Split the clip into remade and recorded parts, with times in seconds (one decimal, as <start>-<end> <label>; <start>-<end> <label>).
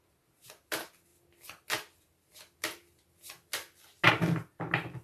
0.0-5.0 recorded